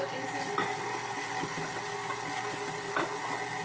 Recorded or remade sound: recorded